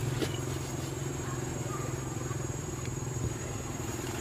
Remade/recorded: remade